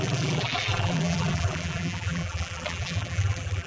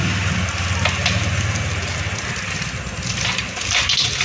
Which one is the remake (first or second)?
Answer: first